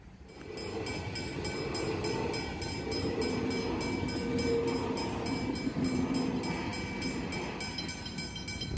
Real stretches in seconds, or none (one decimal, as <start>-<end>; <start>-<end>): 0.0-8.8